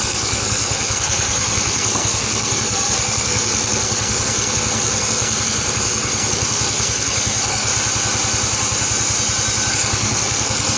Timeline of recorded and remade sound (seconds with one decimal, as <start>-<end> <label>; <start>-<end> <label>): 0.0-7.7 remade; 7.7-9.7 recorded; 9.7-10.8 remade